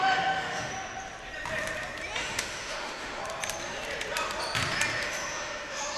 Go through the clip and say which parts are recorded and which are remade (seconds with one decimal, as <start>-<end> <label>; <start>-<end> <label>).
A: 0.0-0.7 remade; 0.7-2.2 recorded; 2.2-3.2 remade; 3.2-5.0 recorded; 5.0-6.0 remade